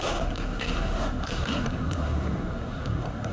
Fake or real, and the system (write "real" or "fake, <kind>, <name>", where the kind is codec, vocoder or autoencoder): fake, codec, SNAC